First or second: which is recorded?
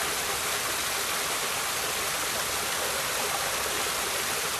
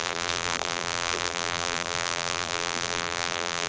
first